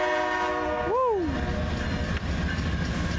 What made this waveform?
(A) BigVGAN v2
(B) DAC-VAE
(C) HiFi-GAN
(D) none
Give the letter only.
D